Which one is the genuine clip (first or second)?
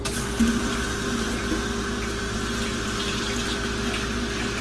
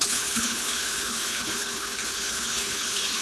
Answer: first